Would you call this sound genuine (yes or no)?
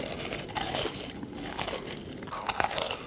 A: yes